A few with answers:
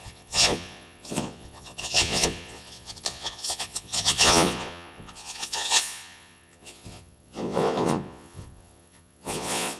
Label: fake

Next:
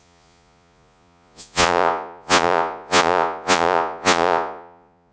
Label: fake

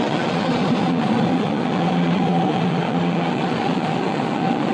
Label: fake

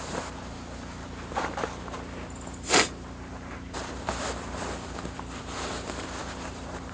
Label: real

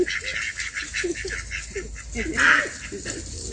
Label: real